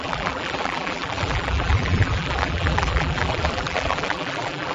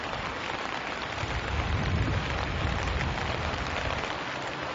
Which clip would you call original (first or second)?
second